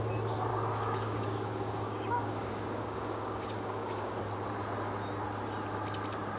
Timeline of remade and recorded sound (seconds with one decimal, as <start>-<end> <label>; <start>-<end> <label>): 0.0-0.5 recorded; 0.5-4.2 remade; 4.2-6.4 recorded